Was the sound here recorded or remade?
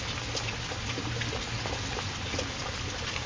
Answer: recorded